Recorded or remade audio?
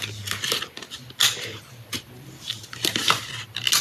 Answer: recorded